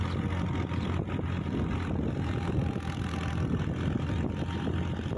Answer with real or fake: real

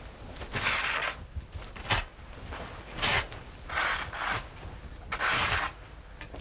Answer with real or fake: real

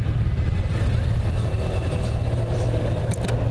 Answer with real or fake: real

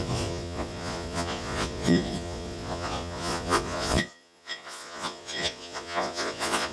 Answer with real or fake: fake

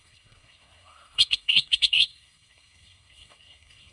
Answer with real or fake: fake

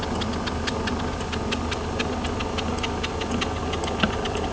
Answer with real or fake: real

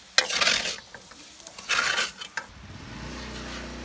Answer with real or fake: real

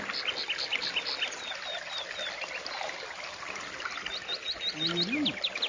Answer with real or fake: real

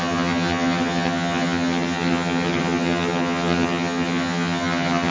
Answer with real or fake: fake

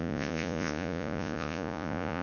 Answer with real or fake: fake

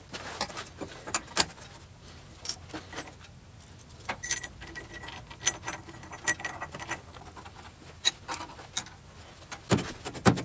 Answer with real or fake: real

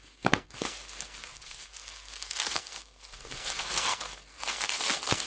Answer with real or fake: fake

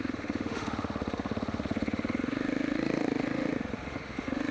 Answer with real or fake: fake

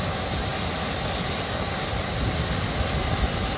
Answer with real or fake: real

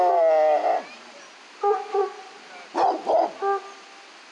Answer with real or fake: real